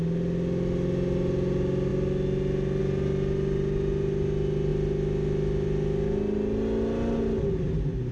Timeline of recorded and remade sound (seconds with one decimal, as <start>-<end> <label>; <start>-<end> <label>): 0.0-8.1 recorded